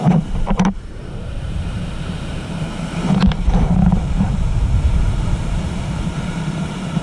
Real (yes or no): no